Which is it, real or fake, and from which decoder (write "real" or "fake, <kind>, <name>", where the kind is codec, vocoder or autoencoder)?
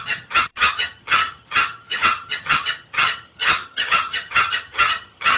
fake, vocoder, HiFi-GAN